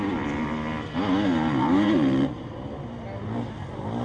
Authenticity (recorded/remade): recorded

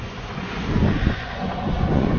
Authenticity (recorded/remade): remade